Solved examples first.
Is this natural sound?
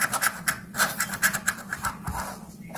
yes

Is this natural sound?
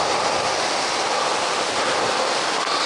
yes